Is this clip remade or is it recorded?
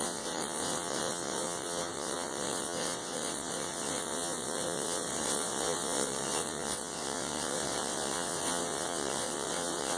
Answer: remade